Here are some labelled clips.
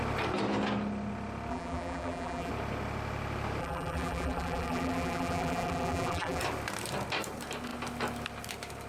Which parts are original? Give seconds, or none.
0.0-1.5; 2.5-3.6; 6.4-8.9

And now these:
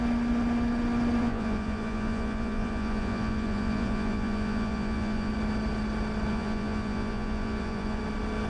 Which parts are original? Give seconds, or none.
0.0-1.2; 5.3-6.3; 8.0-8.5